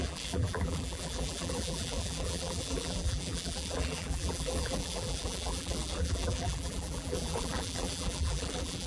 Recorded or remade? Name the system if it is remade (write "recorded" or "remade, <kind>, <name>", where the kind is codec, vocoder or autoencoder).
remade, vocoder, BigVGAN v2